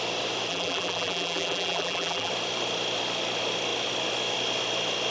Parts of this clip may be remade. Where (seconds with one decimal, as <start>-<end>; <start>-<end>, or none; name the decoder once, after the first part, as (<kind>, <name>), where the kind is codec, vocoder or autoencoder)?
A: 0.5-2.3 (vocoder, BigVGAN v2)